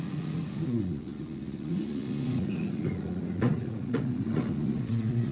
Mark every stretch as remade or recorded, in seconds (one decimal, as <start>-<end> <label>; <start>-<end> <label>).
0.0-5.3 remade

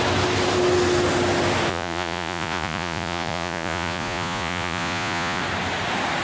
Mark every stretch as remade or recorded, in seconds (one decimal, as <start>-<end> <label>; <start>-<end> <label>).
0.0-1.7 recorded; 1.7-5.4 remade; 5.4-6.2 recorded

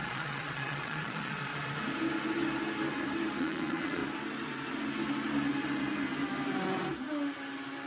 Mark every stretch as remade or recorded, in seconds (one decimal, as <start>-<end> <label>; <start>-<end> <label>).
0.0-1.5 remade; 1.5-3.4 recorded; 3.4-4.0 remade; 4.0-7.9 recorded

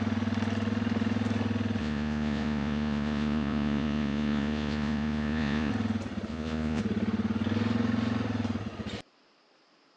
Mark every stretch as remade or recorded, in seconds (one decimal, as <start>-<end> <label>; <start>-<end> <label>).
0.0-1.8 recorded; 1.8-5.7 remade; 5.7-6.3 recorded; 6.3-6.8 remade; 6.8-10.0 recorded

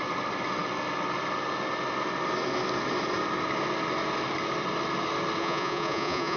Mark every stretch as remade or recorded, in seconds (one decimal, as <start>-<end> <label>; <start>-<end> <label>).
0.0-5.4 recorded; 5.4-6.4 remade

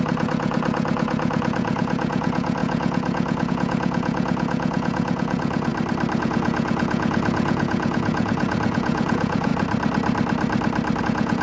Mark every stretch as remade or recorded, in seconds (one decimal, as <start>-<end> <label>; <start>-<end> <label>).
0.0-5.7 remade; 5.7-6.2 recorded; 6.2-9.5 remade; 9.5-11.0 recorded; 11.0-11.4 remade

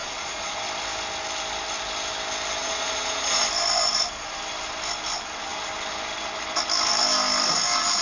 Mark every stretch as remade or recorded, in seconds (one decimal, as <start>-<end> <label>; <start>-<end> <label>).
0.0-0.6 remade; 0.6-2.6 recorded; 2.6-3.4 remade; 3.4-8.0 recorded